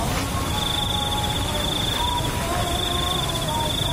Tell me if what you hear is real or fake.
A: real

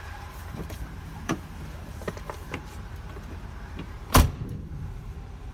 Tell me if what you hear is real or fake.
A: fake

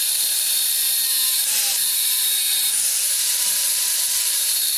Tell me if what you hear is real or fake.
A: fake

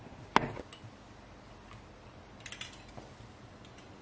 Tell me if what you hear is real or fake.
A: real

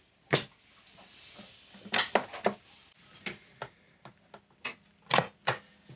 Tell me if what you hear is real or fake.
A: real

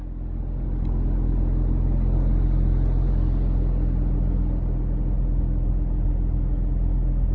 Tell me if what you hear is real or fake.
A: real